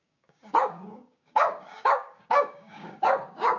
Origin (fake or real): fake